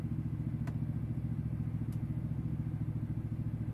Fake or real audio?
real